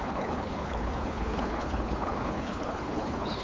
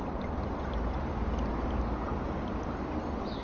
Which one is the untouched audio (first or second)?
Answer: second